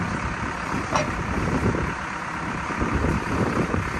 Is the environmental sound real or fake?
real